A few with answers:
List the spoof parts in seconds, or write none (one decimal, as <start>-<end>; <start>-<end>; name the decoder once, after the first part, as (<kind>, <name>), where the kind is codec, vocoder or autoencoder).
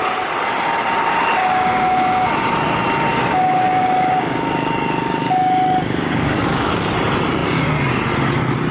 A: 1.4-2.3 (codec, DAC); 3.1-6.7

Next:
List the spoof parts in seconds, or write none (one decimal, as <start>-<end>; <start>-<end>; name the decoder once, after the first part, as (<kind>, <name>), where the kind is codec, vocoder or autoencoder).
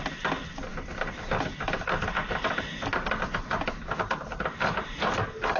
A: none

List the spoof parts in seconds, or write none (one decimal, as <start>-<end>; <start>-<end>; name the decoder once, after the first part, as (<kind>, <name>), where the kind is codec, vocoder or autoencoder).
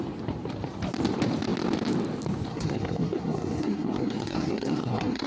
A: 2.5-5.3 (codec, SNAC)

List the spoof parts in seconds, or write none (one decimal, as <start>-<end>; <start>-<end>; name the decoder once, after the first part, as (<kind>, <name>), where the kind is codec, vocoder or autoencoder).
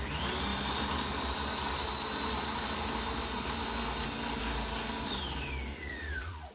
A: 5.7-6.5 (vocoder, Vocos)